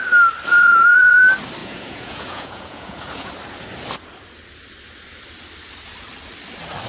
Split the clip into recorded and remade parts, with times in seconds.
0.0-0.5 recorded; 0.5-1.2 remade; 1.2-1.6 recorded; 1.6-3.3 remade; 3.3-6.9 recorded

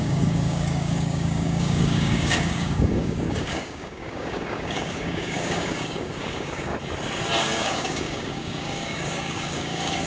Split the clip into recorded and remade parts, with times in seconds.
0.0-6.7 remade; 6.7-7.4 recorded; 7.4-10.1 remade

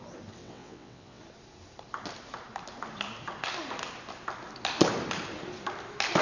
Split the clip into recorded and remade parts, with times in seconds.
0.0-0.4 recorded; 0.4-1.2 remade; 1.2-6.2 recorded

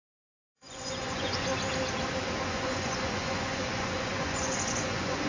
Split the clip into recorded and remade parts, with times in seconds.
0.0-1.5 remade; 1.5-2.4 recorded; 2.4-5.3 remade

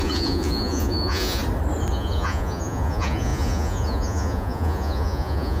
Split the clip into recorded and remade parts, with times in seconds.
0.0-1.4 remade; 1.4-1.9 recorded; 1.9-5.6 remade

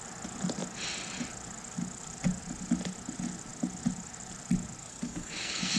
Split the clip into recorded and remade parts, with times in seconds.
0.0-4.8 recorded; 4.8-5.8 remade

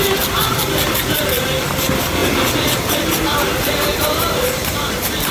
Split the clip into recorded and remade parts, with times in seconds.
0.0-3.9 recorded; 3.9-4.8 remade; 4.8-5.3 recorded

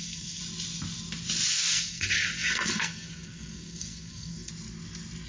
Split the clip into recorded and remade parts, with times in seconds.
0.0-0.4 remade; 0.4-1.5 recorded; 1.5-4.5 remade; 4.5-5.3 recorded